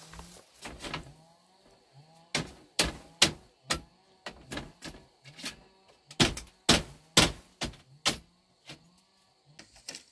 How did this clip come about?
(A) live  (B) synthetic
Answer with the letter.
A